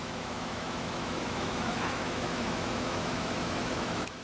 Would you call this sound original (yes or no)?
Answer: no